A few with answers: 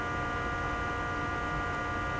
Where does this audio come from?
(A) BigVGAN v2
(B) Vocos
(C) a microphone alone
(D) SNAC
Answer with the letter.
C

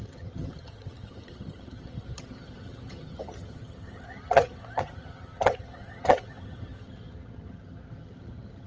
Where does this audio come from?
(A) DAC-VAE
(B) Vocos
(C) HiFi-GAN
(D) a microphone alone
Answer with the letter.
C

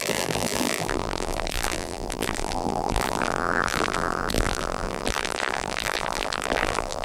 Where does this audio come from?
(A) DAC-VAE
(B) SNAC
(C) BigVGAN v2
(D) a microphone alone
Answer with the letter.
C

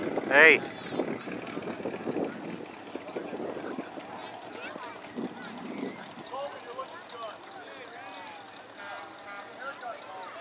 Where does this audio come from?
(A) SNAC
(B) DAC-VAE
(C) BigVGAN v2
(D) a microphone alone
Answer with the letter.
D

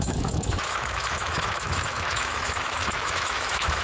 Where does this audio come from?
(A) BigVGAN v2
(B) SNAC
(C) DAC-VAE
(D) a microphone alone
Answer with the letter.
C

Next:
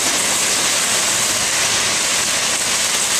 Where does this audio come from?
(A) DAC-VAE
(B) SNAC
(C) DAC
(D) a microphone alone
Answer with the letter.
D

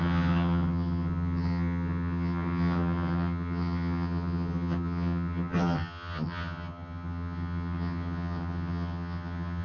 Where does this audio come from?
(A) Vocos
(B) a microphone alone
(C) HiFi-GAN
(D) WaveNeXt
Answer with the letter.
C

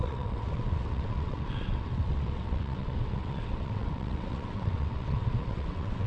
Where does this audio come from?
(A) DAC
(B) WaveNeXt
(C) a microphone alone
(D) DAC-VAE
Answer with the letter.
B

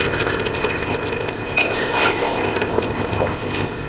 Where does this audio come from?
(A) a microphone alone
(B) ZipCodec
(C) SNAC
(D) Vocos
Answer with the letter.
B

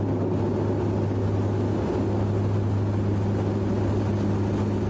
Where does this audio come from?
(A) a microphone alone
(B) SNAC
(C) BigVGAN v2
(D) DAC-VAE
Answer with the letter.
A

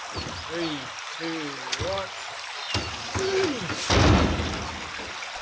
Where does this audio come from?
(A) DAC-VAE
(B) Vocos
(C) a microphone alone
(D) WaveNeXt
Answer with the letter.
C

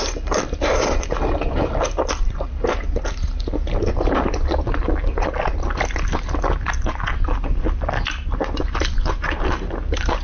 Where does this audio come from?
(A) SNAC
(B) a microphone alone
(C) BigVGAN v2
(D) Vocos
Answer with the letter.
B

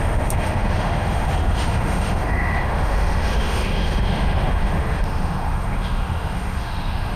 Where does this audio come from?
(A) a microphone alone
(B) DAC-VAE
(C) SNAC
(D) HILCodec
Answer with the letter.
B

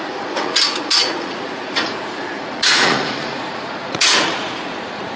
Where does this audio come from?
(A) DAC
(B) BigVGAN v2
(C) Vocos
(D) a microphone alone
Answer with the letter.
C